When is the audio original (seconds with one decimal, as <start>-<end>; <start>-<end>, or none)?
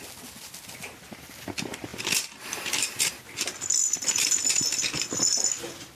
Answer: 0.0-1.9; 3.1-3.8; 4.3-5.9